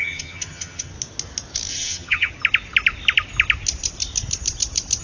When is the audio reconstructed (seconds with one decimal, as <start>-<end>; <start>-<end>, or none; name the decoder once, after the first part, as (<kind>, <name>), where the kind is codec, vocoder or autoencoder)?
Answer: 0.0-0.9 (vocoder, HiFi-GAN); 1.7-2.3